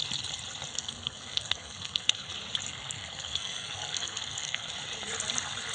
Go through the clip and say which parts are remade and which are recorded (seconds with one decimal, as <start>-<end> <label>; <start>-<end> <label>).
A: 0.0-0.7 recorded; 0.7-2.3 remade; 2.3-2.7 recorded; 2.7-4.7 remade; 4.7-5.7 recorded

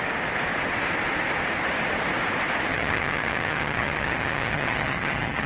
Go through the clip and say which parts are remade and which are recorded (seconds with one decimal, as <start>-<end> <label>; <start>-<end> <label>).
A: 0.0-2.7 recorded; 2.7-5.5 remade

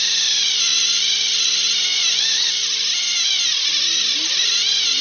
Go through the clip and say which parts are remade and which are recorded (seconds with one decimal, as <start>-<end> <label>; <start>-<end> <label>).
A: 0.0-5.0 recorded